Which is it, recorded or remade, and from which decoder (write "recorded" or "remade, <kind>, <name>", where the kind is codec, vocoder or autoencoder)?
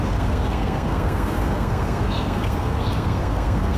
remade, codec, SNAC